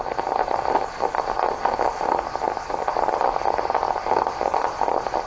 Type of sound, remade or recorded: recorded